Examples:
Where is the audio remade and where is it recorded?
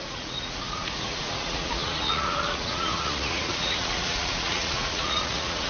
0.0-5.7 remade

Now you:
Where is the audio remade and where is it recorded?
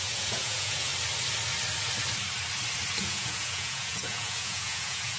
0.0-0.9 remade; 0.9-3.0 recorded; 3.0-5.2 remade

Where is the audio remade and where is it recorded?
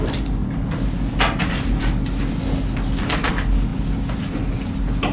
0.0-5.1 recorded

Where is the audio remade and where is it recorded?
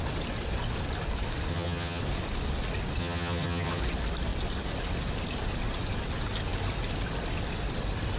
0.0-1.5 recorded; 1.5-2.0 remade; 2.0-3.0 recorded; 3.0-3.8 remade; 3.8-8.2 recorded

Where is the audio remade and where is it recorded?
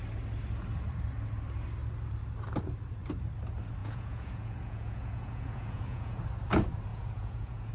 0.0-3.8 recorded; 3.8-6.2 remade; 6.2-6.9 recorded; 6.9-7.7 remade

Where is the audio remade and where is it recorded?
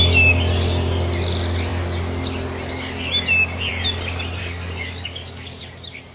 0.0-4.4 recorded; 4.4-5.6 remade; 5.6-6.1 recorded